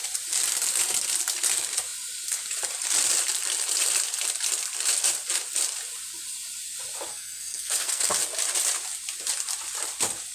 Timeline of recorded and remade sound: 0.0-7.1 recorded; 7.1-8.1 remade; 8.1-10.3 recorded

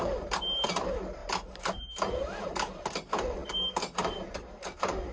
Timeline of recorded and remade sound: 0.0-5.1 remade

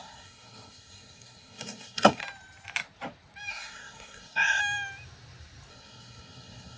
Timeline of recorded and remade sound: 0.0-2.2 remade; 2.2-3.5 recorded; 3.5-4.6 remade; 4.6-5.7 recorded; 5.7-6.8 remade

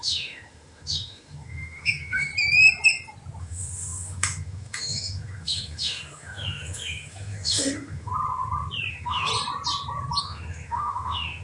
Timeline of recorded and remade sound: 0.0-2.3 remade; 2.3-3.4 recorded; 3.4-8.1 remade; 8.1-8.9 recorded; 8.9-9.3 remade; 9.3-10.2 recorded; 10.2-11.4 remade